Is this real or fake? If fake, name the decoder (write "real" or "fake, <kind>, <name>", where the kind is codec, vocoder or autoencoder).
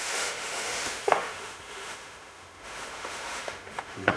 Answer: fake, autoencoder, DAC-VAE